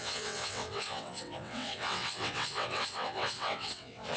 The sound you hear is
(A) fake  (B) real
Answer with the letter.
A